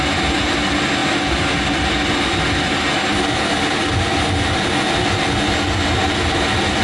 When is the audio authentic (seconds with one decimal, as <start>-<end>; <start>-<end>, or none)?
0.0-6.8